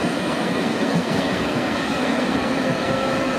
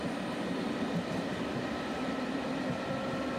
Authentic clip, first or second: second